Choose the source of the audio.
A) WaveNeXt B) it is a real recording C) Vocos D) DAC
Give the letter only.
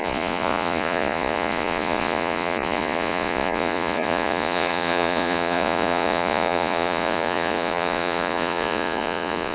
C